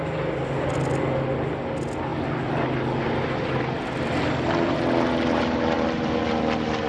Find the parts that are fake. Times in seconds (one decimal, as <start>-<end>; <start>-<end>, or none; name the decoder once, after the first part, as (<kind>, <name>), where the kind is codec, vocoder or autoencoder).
none